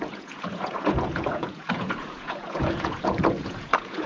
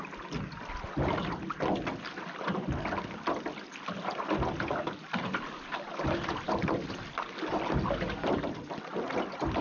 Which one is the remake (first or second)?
first